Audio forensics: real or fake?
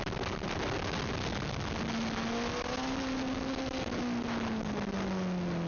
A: real